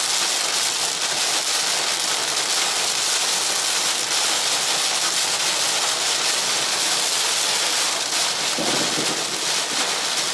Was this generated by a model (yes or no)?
no